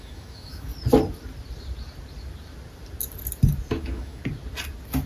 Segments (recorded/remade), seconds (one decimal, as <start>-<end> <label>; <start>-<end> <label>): 0.0-0.7 remade; 0.7-3.8 recorded; 3.8-4.2 remade; 4.2-5.1 recorded